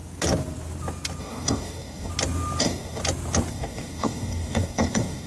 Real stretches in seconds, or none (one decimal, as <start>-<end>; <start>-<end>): 0.0-1.2; 2.1-2.6; 3.0-3.5